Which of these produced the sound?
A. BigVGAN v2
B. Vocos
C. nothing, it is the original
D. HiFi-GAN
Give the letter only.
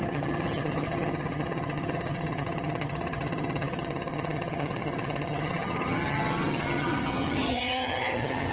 D